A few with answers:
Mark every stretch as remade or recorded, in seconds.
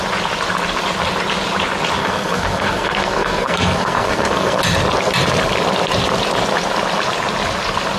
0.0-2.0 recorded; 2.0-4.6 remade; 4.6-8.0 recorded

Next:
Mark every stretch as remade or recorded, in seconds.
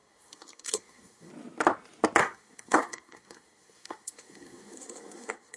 0.0-1.3 remade; 1.3-2.2 recorded; 2.2-5.6 remade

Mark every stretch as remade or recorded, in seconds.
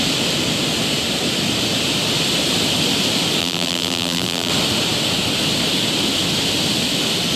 0.0-3.4 recorded; 3.4-4.5 remade; 4.5-7.4 recorded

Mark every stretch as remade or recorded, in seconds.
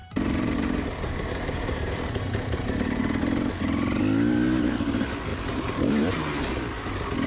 0.0-3.0 remade; 3.0-5.3 recorded; 5.3-5.9 remade; 5.9-7.3 recorded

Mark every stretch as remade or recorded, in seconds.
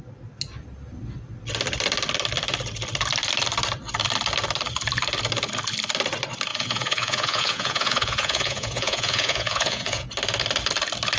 0.0-6.5 recorded; 6.5-10.1 remade; 10.1-11.2 recorded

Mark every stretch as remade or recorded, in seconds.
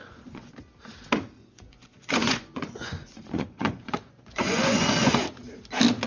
0.0-0.5 remade; 0.5-1.4 recorded; 1.4-5.1 remade; 5.1-6.1 recorded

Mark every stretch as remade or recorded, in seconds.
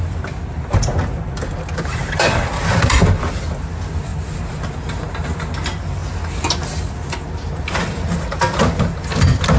0.0-4.1 recorded; 4.1-4.6 remade; 4.6-9.6 recorded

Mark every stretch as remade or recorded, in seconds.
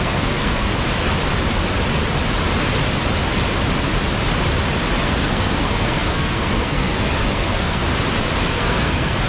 0.0-0.7 remade; 0.7-5.0 recorded; 5.0-7.8 remade; 7.8-8.5 recorded; 8.5-9.3 remade